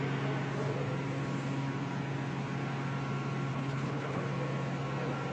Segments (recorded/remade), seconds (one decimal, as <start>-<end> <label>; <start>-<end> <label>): 0.0-3.5 recorded; 3.5-4.2 remade; 4.2-5.3 recorded